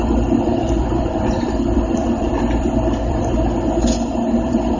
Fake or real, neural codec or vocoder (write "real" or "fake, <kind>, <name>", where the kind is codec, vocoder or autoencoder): fake, vocoder, BigVGAN v2